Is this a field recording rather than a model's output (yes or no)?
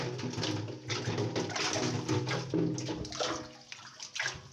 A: yes